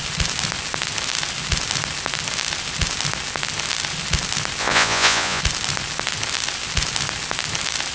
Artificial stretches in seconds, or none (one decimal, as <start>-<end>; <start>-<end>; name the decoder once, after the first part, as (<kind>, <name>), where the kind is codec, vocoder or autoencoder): 4.6-5.4 (vocoder, Vocos)

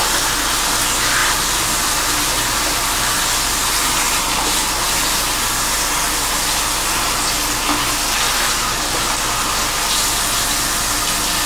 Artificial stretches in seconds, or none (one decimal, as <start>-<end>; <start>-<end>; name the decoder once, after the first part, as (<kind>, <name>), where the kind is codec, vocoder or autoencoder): 1.2-4.2 (vocoder, BigVGAN v2)

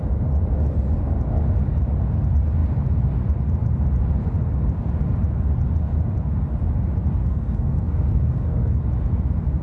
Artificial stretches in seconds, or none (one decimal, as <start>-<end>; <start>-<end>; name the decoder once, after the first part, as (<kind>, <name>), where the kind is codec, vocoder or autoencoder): 7.2-8.8 (codec, SNAC)

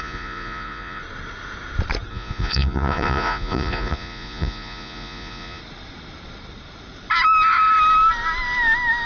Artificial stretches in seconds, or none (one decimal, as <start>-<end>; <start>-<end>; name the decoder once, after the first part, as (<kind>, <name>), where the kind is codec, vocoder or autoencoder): 0.0-1.0 (vocoder, Vocos); 2.1-5.6

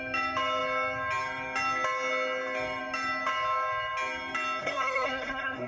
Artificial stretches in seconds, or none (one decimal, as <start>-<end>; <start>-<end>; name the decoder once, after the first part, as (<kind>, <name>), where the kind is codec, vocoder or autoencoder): 4.6-5.7 (codec, SNAC)

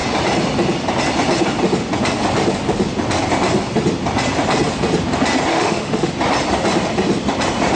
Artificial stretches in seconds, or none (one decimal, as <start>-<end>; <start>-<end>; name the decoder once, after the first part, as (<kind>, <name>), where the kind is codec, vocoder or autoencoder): 5.5-6.1 (autoencoder, DAC-VAE)

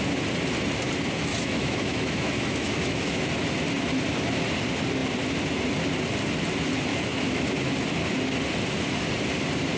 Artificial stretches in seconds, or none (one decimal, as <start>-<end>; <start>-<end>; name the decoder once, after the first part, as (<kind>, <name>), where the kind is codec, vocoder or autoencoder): 1.3-3.3 (autoencoder, DAC-VAE); 6.9-7.7

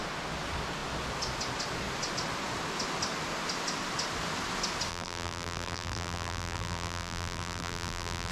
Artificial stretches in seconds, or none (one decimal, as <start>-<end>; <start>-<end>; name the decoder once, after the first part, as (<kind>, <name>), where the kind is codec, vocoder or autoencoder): 4.9-8.3 (vocoder, BigVGAN v2)